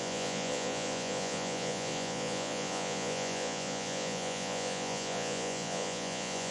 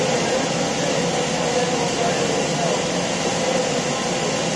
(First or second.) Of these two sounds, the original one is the second